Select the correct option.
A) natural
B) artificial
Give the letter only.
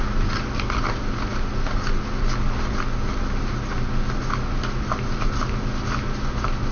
A